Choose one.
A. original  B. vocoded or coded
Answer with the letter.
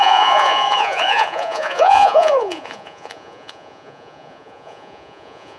B